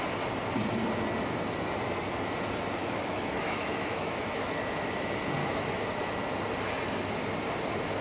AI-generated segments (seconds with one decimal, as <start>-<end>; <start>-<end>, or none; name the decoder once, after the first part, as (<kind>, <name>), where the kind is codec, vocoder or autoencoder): 2.8-4.9 (autoencoder, DAC-VAE); 5.4-6.0

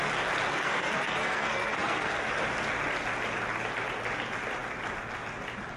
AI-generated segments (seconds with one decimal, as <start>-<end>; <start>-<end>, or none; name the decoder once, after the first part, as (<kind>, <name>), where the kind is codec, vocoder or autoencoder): 0.5-2.4 (codec, SNAC)

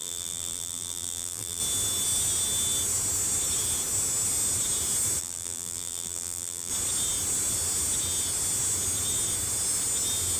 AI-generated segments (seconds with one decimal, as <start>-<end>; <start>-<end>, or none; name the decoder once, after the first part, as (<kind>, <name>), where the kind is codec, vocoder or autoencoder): 0.0-1.6 (vocoder, BigVGAN v2); 5.2-6.7